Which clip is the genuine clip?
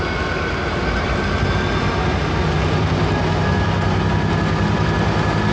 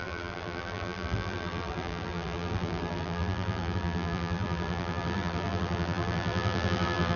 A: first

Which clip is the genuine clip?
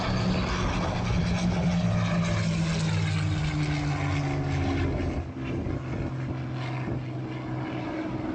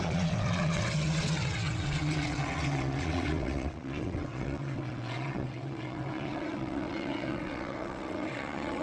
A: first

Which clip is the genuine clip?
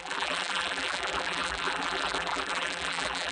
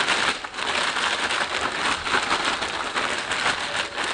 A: second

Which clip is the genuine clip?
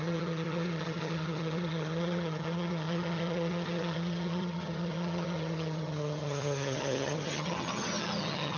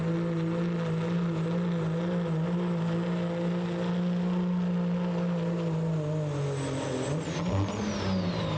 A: second